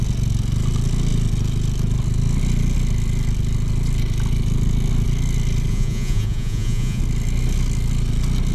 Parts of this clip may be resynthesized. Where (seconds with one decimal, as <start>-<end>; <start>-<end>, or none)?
5.7-7.0